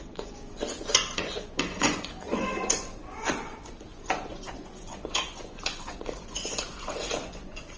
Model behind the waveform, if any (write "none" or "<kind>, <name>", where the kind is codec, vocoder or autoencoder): vocoder, Vocos